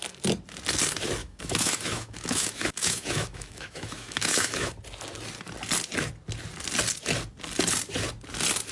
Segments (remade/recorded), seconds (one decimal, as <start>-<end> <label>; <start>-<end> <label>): 0.0-1.2 recorded; 1.2-4.7 remade; 4.7-8.7 recorded